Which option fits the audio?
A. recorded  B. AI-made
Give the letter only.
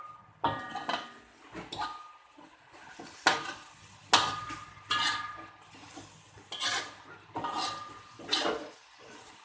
A